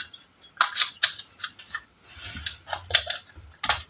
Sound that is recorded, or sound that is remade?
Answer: recorded